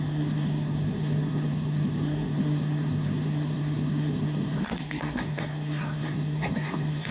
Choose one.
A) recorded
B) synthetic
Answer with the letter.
B